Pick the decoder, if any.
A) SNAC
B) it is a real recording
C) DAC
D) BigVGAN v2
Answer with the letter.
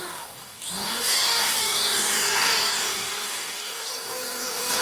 C